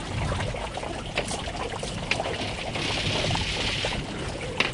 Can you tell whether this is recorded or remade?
recorded